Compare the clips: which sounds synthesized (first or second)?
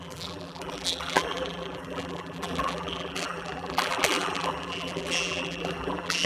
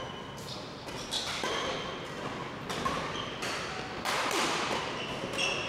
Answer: first